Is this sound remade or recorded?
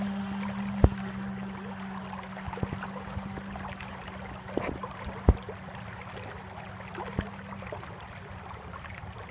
recorded